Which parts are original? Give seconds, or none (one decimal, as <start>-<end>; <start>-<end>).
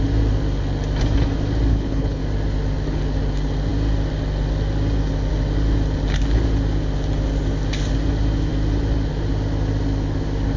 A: 0.0-1.7; 2.2-10.6